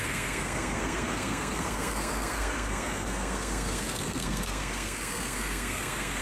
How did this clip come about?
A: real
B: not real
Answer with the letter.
B